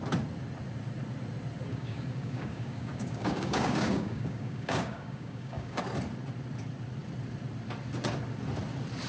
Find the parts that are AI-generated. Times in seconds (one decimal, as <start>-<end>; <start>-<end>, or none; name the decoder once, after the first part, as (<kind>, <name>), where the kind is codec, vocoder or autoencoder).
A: 1.7-5.8 (codec, DAC)